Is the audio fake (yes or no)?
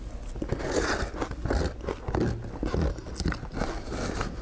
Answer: no